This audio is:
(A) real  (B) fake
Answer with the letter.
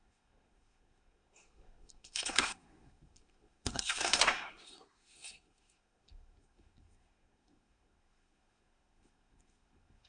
B